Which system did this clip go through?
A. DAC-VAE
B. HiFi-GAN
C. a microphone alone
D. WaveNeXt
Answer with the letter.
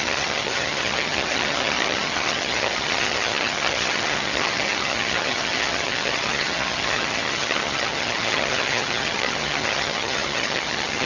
B